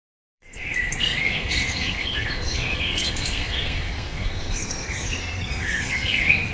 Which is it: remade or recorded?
remade